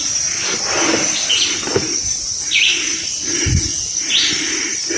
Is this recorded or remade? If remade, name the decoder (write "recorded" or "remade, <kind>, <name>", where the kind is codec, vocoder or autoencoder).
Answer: recorded